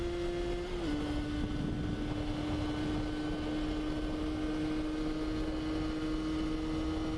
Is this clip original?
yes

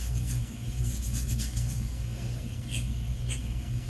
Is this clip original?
no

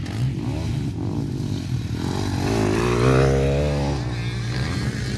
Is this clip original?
yes